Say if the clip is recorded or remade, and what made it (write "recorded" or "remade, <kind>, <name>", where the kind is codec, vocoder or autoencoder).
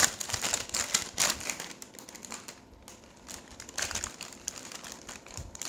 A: recorded